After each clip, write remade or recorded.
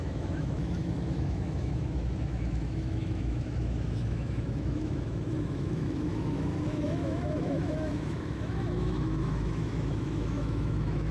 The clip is remade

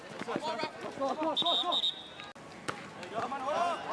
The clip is recorded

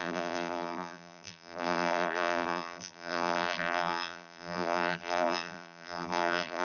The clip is remade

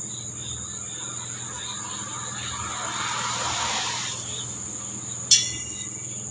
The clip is recorded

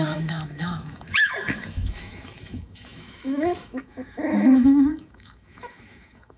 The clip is remade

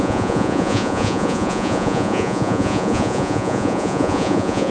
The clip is remade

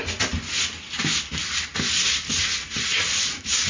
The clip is recorded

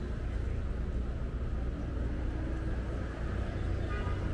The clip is recorded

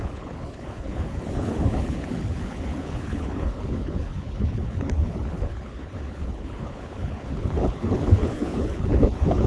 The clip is remade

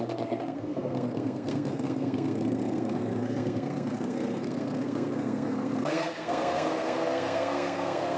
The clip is remade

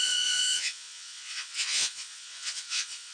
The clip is remade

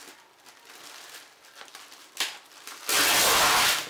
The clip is recorded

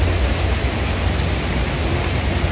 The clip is recorded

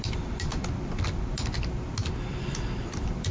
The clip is remade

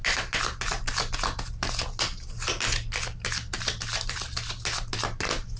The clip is recorded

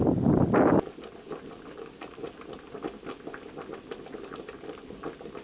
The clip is recorded